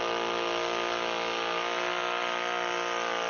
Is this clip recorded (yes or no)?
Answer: yes